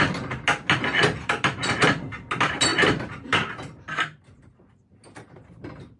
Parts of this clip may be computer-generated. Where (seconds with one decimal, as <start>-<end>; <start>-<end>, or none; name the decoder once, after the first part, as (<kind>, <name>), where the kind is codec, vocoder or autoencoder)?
none